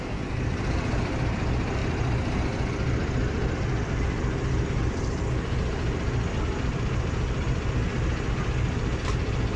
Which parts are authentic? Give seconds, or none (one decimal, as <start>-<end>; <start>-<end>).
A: 0.0-9.6